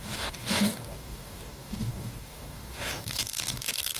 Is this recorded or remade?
remade